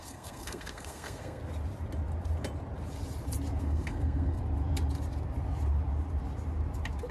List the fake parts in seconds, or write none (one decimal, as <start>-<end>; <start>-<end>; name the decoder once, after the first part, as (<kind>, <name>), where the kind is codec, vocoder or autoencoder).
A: 0.0-1.4 (codec, SNAC); 3.6-4.4